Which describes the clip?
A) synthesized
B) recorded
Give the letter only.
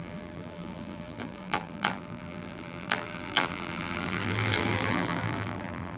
A